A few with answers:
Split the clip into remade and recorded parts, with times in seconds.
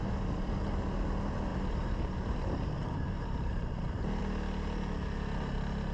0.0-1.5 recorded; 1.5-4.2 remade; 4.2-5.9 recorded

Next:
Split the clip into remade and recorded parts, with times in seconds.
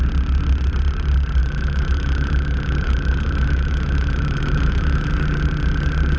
0.0-1.4 recorded; 1.4-5.1 remade; 5.1-6.2 recorded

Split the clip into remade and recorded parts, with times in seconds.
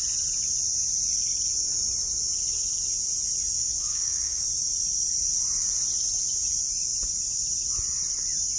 0.0-3.6 recorded; 3.6-4.4 remade; 4.4-8.6 recorded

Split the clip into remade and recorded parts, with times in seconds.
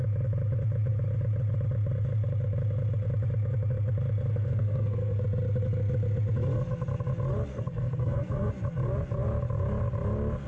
0.0-4.3 recorded; 4.3-5.2 remade; 5.2-7.5 recorded; 7.5-8.5 remade; 8.5-10.5 recorded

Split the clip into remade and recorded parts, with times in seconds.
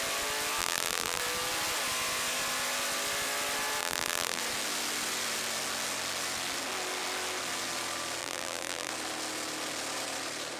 0.0-0.6 recorded; 0.6-1.2 remade; 1.2-3.8 recorded; 3.8-4.4 remade; 4.4-8.2 recorded; 8.2-8.9 remade; 8.9-10.6 recorded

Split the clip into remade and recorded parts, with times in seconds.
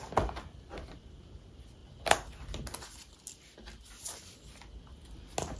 0.0-5.6 recorded